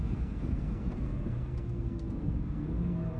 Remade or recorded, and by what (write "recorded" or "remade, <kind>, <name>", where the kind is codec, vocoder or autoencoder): remade, codec, SNAC